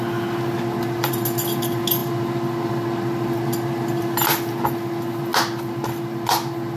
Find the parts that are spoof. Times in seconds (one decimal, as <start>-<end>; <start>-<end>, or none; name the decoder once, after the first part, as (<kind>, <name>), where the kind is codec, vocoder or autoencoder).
none